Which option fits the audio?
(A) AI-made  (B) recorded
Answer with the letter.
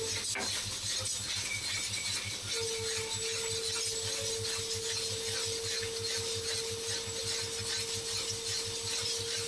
B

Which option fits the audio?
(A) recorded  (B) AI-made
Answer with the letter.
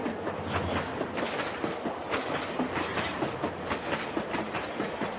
A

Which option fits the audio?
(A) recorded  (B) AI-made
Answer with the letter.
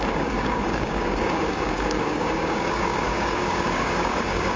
B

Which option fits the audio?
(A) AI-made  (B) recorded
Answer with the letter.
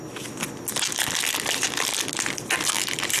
B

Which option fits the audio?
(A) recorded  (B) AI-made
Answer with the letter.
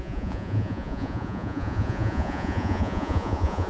B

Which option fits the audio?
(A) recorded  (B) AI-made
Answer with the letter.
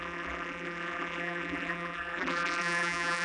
B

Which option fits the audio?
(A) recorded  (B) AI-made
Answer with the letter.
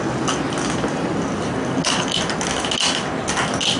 A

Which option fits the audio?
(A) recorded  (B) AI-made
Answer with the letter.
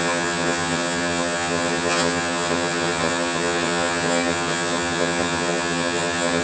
B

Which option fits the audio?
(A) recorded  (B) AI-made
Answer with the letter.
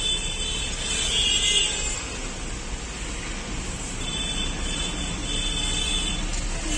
A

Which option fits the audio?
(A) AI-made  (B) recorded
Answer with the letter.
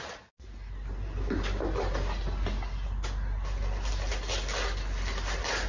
B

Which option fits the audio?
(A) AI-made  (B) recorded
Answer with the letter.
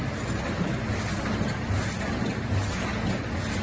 B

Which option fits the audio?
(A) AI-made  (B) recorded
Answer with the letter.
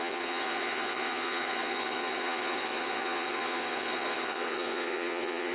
A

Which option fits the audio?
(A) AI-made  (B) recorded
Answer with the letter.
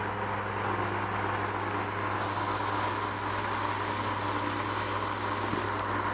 B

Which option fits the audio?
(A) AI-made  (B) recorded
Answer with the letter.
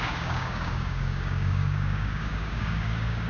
A